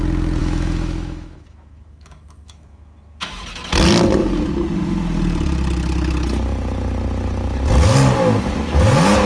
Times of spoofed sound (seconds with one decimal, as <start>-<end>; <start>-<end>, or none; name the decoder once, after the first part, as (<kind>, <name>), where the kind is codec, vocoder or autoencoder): 0.4-3.4 (autoencoder, DAC-VAE)